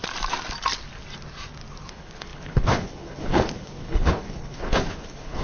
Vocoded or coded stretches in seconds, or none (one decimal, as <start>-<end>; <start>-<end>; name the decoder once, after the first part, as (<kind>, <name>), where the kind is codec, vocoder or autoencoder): 1.9-5.4 (codec, HILCodec)